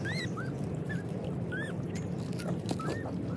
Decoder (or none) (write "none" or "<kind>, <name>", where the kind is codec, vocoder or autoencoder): none